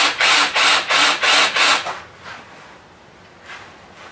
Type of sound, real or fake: real